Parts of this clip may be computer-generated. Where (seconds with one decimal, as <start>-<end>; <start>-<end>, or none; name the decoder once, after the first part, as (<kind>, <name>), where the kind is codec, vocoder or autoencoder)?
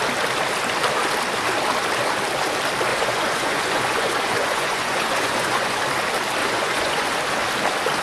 2.9-5.8 (vocoder, Vocos); 6.4-7.2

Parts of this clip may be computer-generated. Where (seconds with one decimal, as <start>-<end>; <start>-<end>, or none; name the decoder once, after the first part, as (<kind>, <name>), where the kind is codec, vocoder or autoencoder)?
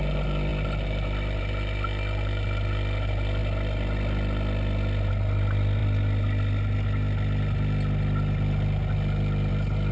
none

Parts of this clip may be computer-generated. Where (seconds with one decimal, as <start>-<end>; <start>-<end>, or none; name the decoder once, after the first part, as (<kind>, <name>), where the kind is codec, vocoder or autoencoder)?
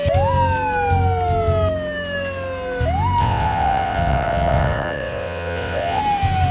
3.2-6.0 (vocoder, WaveNeXt)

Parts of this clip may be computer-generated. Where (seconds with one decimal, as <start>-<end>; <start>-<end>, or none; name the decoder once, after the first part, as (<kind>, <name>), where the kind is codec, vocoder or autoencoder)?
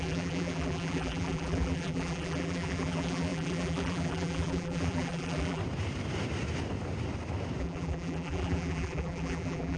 0.0-5.6 (vocoder, BigVGAN v2); 7.6-9.8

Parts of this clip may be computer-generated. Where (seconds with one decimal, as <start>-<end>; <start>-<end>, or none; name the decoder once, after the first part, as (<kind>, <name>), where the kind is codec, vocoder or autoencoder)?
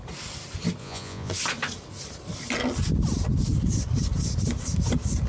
0.8-1.3 (vocoder, Vocos)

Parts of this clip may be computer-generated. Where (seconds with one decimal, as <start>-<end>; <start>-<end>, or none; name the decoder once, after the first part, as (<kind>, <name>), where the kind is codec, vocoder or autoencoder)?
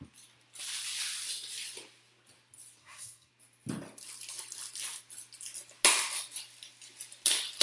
2.8-3.3 (codec, SNAC)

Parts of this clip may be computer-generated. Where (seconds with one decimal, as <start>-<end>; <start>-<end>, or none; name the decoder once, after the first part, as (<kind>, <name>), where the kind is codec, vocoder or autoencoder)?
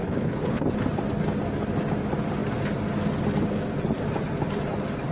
0.0-0.6 (codec, HILCodec)